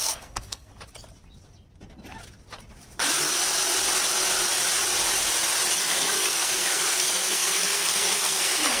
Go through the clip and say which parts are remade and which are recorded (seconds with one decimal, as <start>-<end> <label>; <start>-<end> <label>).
0.0-0.7 remade; 0.7-5.8 recorded; 5.8-8.8 remade